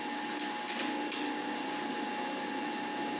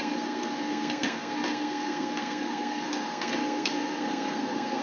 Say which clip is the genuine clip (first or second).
first